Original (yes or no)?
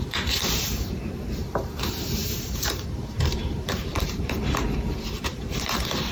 no